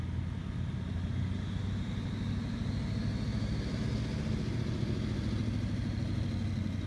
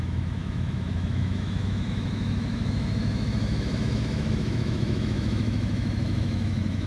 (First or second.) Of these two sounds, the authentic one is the first